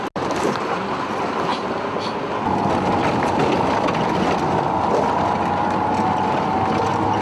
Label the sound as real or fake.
real